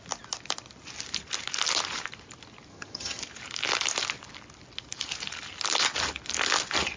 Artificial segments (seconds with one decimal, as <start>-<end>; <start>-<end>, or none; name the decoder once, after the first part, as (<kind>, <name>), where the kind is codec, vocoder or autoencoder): 2.7-3.2 (vocoder, HiFi-GAN)